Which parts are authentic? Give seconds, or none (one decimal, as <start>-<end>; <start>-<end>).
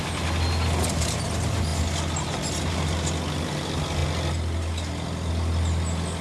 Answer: 0.0-6.2